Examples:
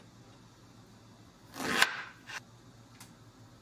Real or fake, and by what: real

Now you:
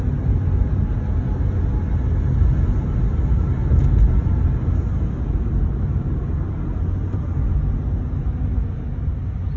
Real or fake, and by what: real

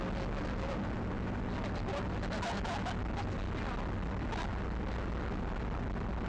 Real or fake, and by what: real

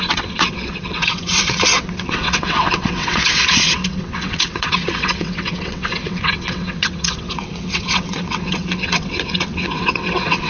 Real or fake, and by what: fake, vocoder, WaveNeXt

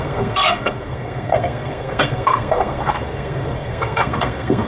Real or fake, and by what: fake, codec, SNAC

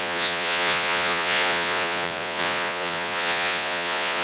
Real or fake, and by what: fake, vocoder, Vocos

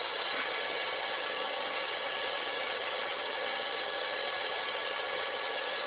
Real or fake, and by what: fake, vocoder, HiFi-GAN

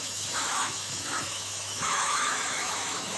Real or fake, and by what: fake, autoencoder, DAC-VAE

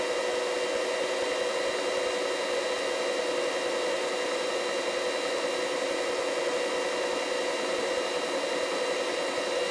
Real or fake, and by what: real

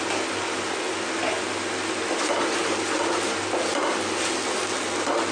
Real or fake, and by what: real